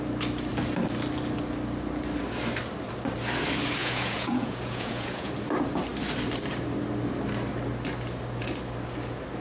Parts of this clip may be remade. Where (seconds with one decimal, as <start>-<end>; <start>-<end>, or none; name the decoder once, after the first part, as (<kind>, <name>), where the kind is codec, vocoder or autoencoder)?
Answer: 3.8-5.3 (vocoder, Vocos)